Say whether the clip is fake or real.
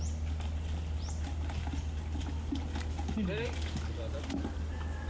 real